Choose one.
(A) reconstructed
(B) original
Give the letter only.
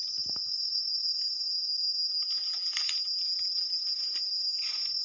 B